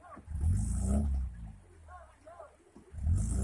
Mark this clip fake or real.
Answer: real